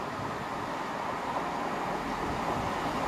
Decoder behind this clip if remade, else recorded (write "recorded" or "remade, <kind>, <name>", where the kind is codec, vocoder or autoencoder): recorded